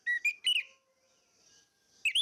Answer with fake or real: real